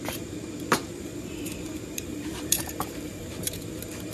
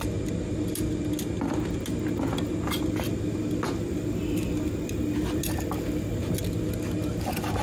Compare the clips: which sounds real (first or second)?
second